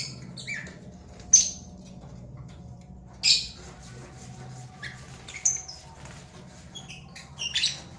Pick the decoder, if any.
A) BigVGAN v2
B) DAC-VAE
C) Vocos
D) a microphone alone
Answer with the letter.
D